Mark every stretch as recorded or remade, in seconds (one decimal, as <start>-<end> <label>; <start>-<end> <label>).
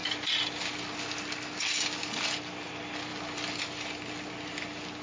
0.0-5.0 recorded